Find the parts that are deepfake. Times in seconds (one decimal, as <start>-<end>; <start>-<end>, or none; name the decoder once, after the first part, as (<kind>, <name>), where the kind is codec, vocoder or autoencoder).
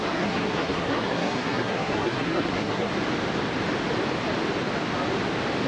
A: 0.0-2.9 (codec, SNAC)